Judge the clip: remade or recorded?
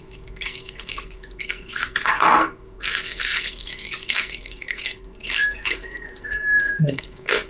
remade